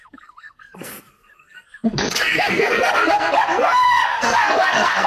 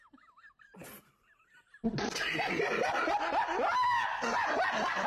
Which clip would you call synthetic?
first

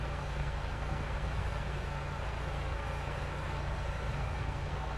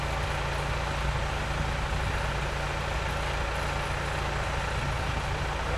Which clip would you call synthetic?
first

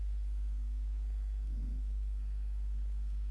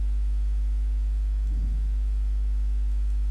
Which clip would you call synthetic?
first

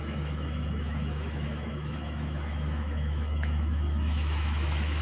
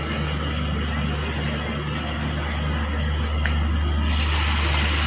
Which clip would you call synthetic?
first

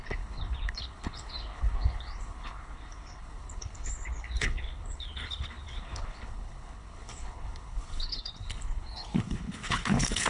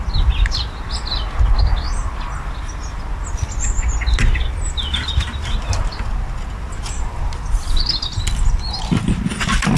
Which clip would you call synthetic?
first